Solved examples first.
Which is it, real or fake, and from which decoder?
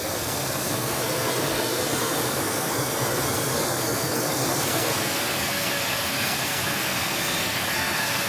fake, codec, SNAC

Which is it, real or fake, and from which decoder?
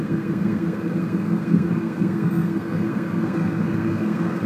fake, codec, SNAC